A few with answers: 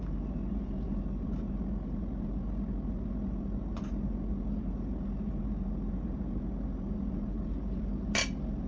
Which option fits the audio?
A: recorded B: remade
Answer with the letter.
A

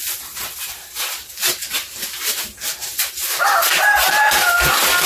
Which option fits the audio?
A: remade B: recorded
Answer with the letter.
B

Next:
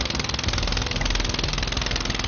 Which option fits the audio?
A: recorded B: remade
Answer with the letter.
A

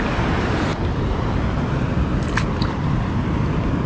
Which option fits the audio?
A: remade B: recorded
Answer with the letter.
A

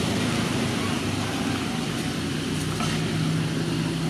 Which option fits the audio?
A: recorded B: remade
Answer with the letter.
A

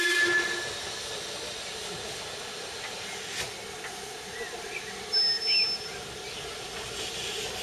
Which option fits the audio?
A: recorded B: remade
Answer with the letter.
A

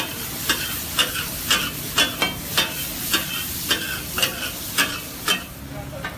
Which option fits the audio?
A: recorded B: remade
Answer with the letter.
A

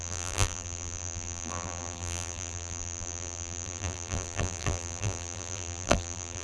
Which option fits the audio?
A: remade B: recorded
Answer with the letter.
A